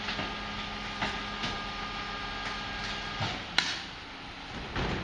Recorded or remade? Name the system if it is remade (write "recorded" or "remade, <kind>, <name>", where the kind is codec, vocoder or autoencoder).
recorded